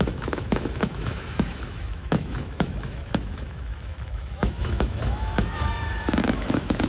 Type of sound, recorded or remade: remade